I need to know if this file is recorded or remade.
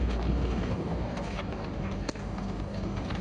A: remade